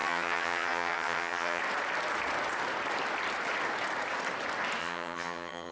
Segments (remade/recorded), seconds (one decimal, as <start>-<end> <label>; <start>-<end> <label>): 0.0-1.6 remade; 1.6-4.8 recorded; 4.8-5.7 remade